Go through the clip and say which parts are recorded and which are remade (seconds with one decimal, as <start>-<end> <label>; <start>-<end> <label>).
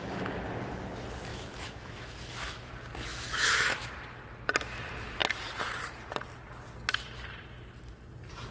0.0-1.3 recorded; 1.3-2.7 remade; 2.7-3.1 recorded; 3.1-3.9 remade; 3.9-8.5 recorded